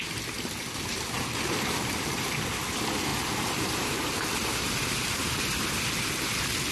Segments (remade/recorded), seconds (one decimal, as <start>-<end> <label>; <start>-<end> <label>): 0.0-0.9 recorded; 0.9-2.5 remade; 2.5-3.1 recorded; 3.1-5.9 remade; 5.9-6.7 recorded